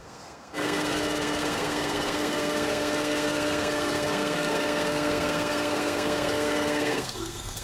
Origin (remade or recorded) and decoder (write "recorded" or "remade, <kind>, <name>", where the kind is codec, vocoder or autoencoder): remade, codec, SNAC